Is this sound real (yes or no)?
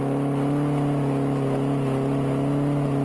yes